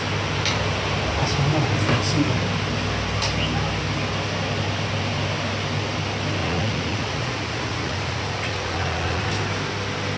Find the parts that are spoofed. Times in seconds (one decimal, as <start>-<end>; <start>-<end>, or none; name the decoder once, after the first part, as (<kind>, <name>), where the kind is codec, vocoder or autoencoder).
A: 6.4-9.3 (vocoder, Vocos)